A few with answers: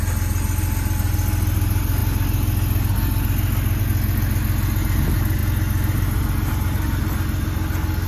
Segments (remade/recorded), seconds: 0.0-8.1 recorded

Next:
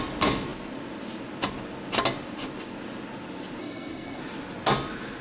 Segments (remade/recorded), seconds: 0.0-3.6 recorded; 3.6-4.2 remade; 4.2-5.2 recorded

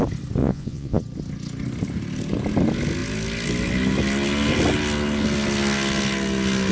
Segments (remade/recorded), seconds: 0.0-0.4 recorded; 0.4-1.0 remade; 1.0-6.7 recorded

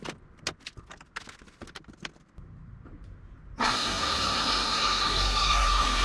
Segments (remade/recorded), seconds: 0.0-3.6 recorded; 3.6-6.0 remade

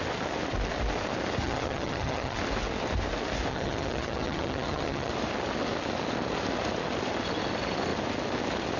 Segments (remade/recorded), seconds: 0.0-1.4 recorded; 1.4-2.4 remade; 2.4-3.5 recorded; 3.5-5.1 remade; 5.1-8.8 recorded